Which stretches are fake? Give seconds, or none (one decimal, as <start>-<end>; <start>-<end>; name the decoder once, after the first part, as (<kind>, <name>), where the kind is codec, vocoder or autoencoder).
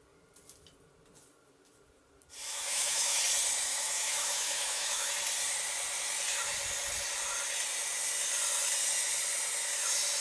2.5-3.2 (autoencoder, DAC-VAE); 3.7-5.1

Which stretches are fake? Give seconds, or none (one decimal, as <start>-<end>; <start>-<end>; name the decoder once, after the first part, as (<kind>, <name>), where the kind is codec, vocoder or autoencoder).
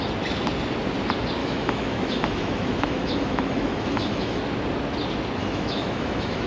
1.4-4.4 (autoencoder, DAC-VAE); 5.4-6.5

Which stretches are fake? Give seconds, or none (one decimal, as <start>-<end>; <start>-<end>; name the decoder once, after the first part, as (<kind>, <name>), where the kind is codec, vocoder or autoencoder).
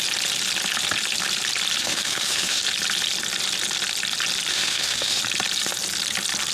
1.8-2.6 (autoencoder, DAC-VAE); 4.5-5.2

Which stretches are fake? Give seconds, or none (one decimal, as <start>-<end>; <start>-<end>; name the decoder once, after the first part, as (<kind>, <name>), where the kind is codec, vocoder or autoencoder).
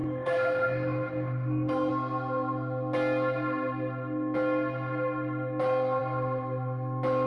0.0-1.9 (autoencoder, DAC-VAE)